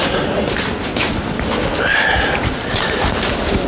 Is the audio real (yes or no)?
yes